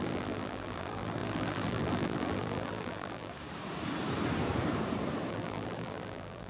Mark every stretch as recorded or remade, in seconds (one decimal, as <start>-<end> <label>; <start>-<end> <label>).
0.0-3.3 remade; 3.3-5.3 recorded; 5.3-6.5 remade